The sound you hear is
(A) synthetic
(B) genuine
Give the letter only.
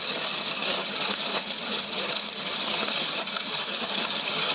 A